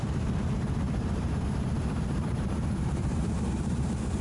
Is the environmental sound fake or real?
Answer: fake